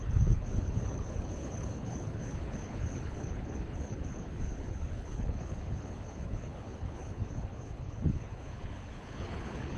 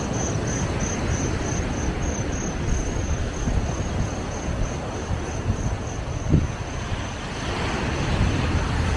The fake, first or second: first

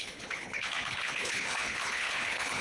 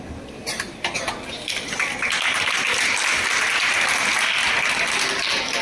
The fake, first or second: first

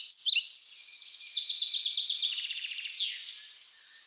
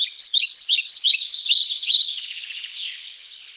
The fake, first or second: second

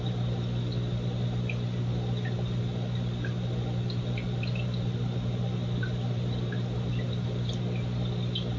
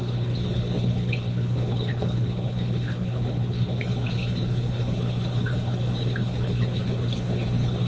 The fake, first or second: second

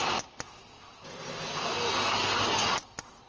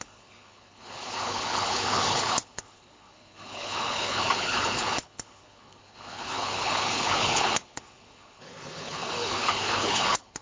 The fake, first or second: second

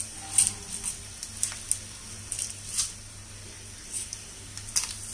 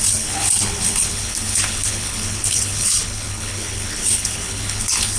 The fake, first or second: second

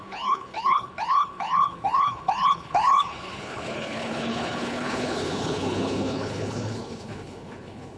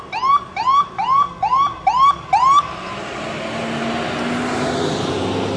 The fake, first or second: first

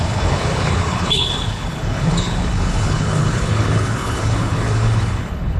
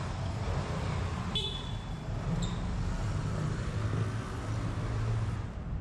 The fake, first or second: first